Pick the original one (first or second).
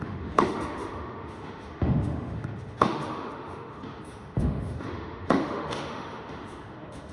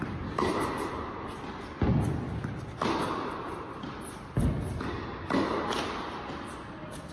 second